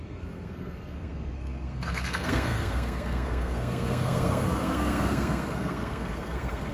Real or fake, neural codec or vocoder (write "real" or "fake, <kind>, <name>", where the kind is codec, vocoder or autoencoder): fake, codec, SNAC